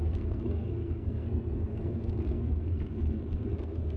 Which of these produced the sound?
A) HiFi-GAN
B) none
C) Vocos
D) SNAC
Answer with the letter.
D